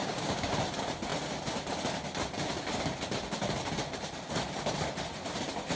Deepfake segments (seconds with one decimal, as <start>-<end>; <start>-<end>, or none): 0.0-0.5